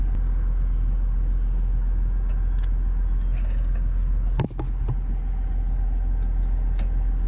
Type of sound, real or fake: real